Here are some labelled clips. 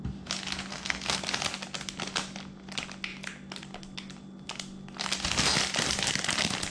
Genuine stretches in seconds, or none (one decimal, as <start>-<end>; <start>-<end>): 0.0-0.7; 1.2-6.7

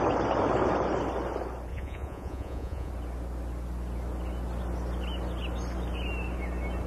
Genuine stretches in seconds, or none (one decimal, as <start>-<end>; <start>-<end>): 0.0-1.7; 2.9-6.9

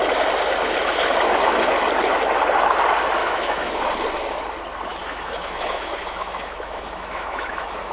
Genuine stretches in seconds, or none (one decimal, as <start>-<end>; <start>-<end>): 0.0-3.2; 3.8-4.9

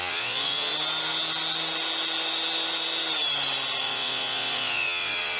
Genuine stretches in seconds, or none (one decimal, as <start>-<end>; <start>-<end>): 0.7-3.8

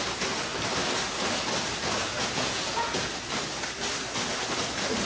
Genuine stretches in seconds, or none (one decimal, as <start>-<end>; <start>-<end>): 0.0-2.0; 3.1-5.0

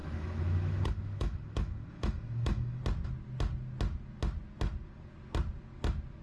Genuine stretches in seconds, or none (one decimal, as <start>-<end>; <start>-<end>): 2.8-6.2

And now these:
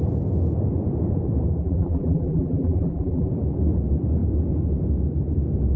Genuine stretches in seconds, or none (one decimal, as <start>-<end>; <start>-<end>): 0.0-1.6; 3.3-5.8

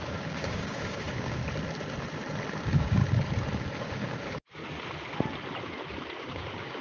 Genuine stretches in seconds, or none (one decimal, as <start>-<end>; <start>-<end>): 1.4-2.6; 3.0-3.8; 4.6-6.2